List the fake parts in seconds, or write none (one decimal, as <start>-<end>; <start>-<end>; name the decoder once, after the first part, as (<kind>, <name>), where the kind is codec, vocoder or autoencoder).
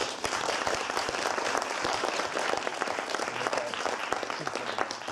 0.0-2.2 (vocoder, BigVGAN v2); 2.7-4.0